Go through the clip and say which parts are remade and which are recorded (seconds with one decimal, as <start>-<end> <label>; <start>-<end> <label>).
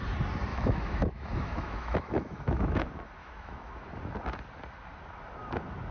0.0-0.5 recorded; 0.5-2.8 remade; 2.8-3.2 recorded; 3.2-3.7 remade; 3.7-5.9 recorded